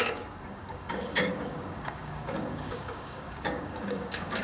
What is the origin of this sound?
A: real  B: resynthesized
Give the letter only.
B